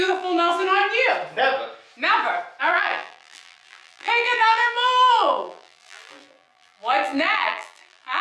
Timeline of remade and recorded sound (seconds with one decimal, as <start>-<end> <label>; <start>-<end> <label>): 0.0-0.8 remade; 0.8-2.6 recorded; 2.6-8.2 remade

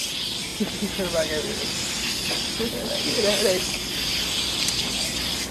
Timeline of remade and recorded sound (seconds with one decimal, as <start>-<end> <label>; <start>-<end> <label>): 0.0-5.5 recorded

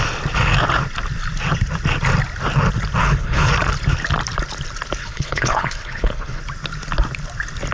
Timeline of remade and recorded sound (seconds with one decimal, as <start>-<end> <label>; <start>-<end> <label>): 0.0-3.0 recorded; 3.0-3.5 remade; 3.5-5.0 recorded; 5.0-6.4 remade; 6.4-7.7 recorded

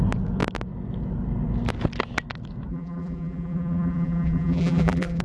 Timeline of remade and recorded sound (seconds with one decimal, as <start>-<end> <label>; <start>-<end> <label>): 0.0-2.7 recorded; 2.7-5.2 remade